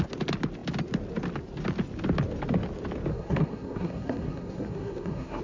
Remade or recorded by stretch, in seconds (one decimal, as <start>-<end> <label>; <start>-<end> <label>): 0.0-3.1 recorded; 3.1-5.4 remade